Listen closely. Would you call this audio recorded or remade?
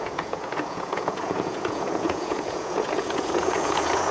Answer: remade